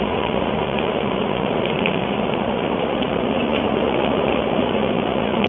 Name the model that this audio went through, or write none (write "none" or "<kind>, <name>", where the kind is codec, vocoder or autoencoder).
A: vocoder, Vocos